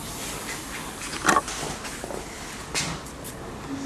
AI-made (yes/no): no